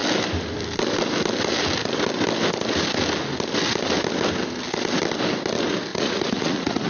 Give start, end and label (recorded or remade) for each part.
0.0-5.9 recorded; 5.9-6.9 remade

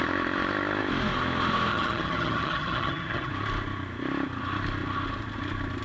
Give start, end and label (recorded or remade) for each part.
0.0-1.7 recorded; 1.7-3.3 remade; 3.3-5.8 recorded

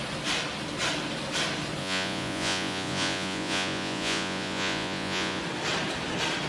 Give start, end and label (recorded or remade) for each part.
0.0-1.8 recorded; 1.8-5.4 remade; 5.4-6.5 recorded